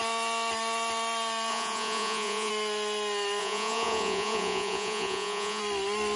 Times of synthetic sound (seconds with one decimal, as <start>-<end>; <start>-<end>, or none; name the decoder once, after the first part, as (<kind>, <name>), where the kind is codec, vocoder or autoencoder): 1.5-2.5 (vocoder, Vocos); 3.4-5.6